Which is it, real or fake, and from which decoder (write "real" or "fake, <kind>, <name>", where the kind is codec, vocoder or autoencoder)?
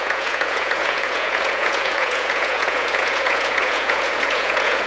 fake, vocoder, Vocos